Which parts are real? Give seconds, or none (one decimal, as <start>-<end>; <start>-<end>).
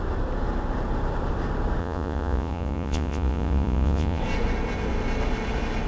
0.0-1.8; 4.2-5.9